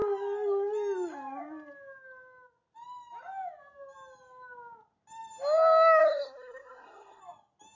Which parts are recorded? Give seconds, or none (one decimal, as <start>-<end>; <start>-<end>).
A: 0.0-6.0; 7.2-7.8